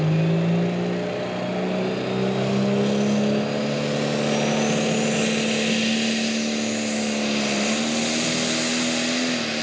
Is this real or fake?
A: real